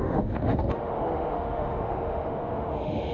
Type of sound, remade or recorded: remade